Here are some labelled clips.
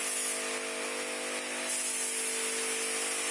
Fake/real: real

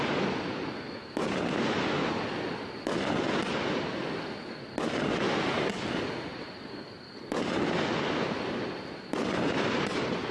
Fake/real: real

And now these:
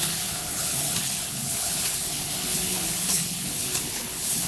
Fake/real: fake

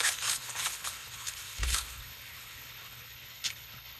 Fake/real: fake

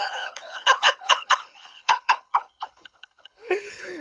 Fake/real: fake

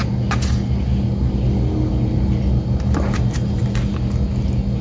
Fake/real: real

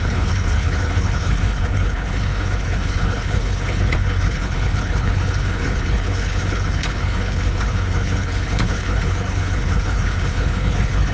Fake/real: fake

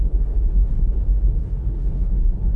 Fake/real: fake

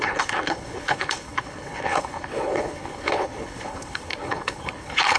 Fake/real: fake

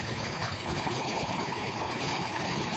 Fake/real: fake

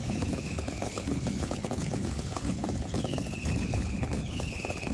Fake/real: fake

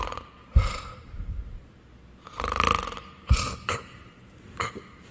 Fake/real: real